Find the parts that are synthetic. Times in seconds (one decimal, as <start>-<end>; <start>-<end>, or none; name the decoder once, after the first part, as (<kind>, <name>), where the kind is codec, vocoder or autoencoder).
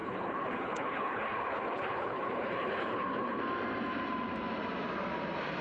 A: 0.0-3.4 (codec, HILCodec)